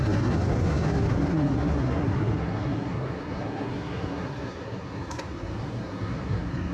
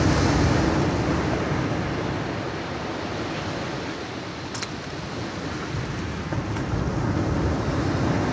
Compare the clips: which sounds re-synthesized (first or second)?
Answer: first